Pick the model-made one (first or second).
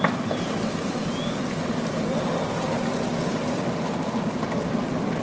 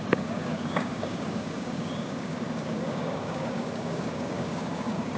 second